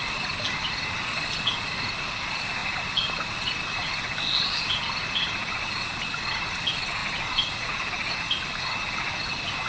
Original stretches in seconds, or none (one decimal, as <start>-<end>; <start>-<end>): 0.0-9.7